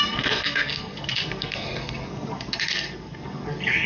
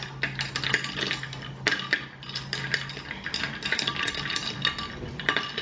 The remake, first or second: first